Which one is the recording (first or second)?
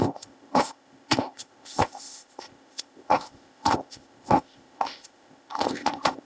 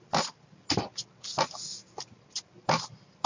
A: second